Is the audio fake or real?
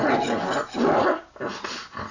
real